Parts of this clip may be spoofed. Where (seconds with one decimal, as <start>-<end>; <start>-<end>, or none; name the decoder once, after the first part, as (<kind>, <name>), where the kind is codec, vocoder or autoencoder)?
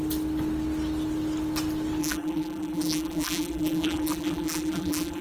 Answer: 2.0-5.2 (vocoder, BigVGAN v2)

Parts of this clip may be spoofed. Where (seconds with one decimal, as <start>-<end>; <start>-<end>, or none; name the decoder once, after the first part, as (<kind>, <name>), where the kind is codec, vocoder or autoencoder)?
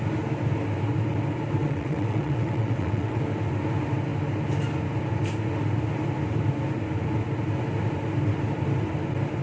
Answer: 1.6-3.2 (vocoder, WaveNeXt)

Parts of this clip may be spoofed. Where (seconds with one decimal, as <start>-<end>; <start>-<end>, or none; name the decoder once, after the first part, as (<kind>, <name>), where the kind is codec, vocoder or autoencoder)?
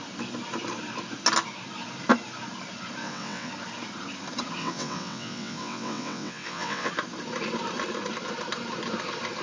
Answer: 3.0-3.5 (vocoder, WaveNeXt); 4.6-6.9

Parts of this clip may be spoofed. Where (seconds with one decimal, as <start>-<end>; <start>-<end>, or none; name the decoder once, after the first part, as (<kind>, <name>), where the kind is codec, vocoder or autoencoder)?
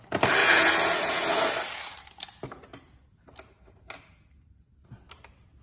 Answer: 0.4-1.5 (vocoder, Vocos)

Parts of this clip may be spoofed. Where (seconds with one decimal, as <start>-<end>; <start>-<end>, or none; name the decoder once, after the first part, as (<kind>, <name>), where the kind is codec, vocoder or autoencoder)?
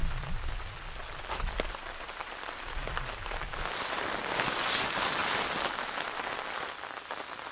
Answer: none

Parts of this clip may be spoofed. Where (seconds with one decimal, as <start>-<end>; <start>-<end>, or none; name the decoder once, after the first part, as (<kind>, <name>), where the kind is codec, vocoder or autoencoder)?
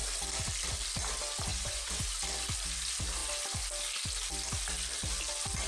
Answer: 1.5-2.1 (vocoder, Vocos)